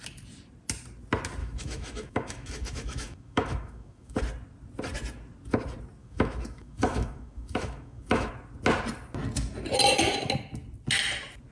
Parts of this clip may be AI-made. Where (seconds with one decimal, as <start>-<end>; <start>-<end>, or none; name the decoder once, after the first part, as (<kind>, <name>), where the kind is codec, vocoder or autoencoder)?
1.4-4.2 (autoencoder, DAC-VAE); 6.0-8.3